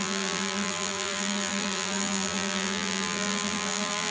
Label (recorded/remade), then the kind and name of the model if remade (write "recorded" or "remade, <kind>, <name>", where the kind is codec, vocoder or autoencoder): remade, vocoder, BigVGAN v2